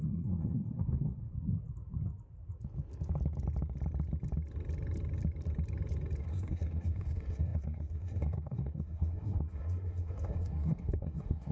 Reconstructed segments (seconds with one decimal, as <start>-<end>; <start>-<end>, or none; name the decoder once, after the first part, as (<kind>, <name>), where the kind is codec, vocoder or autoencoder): 0.0-1.3 (codec, SNAC); 6.2-11.5